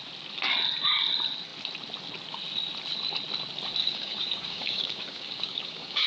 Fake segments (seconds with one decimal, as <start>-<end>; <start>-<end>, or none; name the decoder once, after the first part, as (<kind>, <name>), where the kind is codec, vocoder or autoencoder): 3.8-6.1 (codec, DAC)